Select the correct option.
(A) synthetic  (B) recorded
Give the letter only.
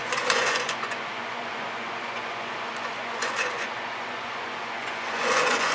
A